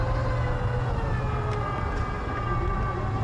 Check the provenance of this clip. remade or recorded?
recorded